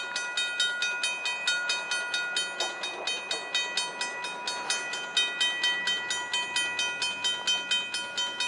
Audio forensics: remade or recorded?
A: recorded